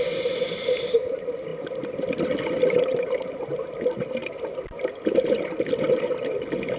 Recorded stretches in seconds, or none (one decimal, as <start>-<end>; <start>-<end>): 0.0-6.8